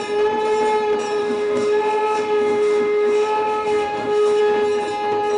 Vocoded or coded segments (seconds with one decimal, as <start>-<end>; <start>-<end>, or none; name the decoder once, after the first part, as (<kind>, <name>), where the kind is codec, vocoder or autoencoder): 1.2-4.4 (autoencoder, DAC-VAE)